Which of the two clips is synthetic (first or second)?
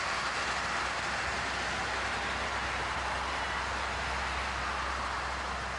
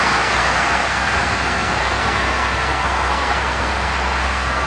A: second